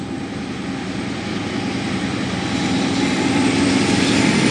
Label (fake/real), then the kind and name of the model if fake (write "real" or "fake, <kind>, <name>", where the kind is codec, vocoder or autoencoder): real